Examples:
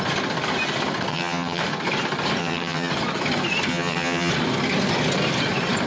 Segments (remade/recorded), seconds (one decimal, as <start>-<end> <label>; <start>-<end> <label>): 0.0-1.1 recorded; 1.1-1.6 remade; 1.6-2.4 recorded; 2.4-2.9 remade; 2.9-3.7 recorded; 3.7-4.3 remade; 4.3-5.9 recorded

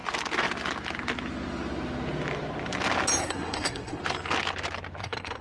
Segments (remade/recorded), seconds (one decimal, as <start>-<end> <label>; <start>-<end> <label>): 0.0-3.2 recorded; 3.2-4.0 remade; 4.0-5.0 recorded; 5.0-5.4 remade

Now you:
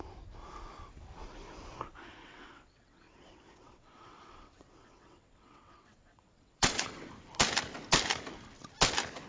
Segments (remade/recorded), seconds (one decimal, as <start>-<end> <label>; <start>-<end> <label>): 0.0-2.2 recorded; 2.2-7.1 remade; 7.1-9.3 recorded

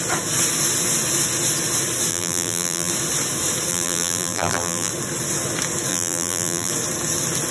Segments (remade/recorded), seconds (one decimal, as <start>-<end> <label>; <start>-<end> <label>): 0.0-2.1 recorded; 2.1-2.9 remade; 2.9-3.7 recorded; 3.7-4.9 remade; 4.9-5.9 recorded; 5.9-6.7 remade; 6.7-7.5 recorded

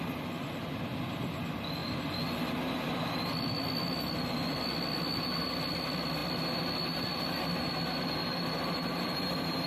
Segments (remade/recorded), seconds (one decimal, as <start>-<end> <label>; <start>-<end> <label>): 0.0-8.2 recorded; 8.2-9.7 remade

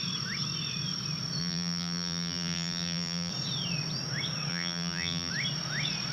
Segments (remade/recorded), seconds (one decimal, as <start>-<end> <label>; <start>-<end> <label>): 0.0-1.4 recorded; 1.4-3.3 remade; 3.3-4.5 recorded; 4.5-5.3 remade; 5.3-6.1 recorded

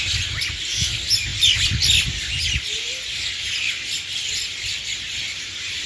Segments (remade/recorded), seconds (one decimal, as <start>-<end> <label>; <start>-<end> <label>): 0.0-5.9 recorded

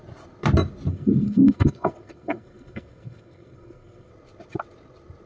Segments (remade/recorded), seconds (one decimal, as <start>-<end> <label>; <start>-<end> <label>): 0.0-0.9 recorded; 0.9-4.1 remade; 4.1-5.3 recorded